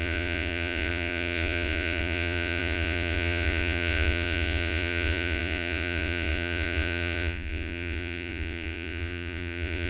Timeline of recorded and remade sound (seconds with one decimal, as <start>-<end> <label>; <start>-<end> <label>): 0.0-9.9 remade